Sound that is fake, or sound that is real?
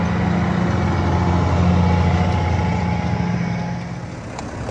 real